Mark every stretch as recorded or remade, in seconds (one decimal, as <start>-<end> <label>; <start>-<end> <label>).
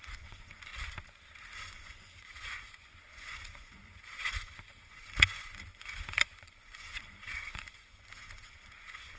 0.0-0.7 remade; 0.7-1.6 recorded; 1.6-9.2 remade